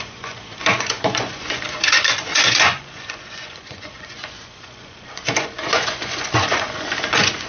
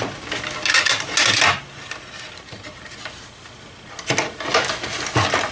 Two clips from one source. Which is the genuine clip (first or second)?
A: second